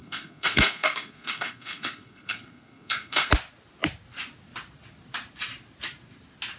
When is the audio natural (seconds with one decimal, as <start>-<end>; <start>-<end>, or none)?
3.3-6.6